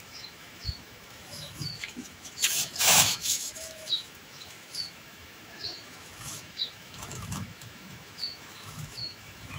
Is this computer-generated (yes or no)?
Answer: yes